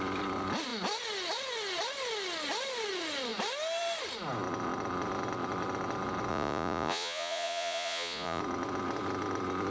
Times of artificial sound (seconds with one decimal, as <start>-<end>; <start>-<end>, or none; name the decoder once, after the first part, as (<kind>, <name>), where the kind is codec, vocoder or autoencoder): 6.3-8.4 (vocoder, Vocos)